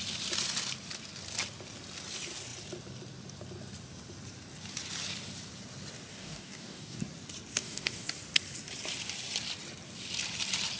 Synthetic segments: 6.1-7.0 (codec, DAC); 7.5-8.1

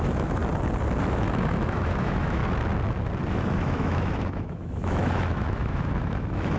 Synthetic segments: 0.0-0.4 (autoencoder, DAC-VAE); 1.0-2.4; 3.3-6.6